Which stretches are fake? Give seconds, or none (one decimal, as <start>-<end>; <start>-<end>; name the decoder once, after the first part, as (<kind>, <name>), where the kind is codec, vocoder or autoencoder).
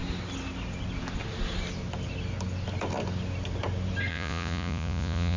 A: 4.1-5.4 (vocoder, Vocos)